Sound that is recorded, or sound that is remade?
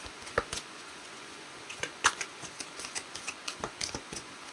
remade